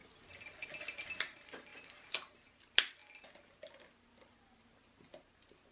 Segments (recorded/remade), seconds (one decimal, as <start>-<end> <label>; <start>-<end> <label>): 0.0-1.7 recorded; 1.7-2.5 remade; 2.5-5.7 recorded